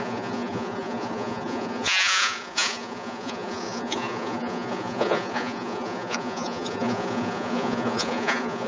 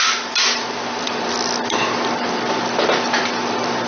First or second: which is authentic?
second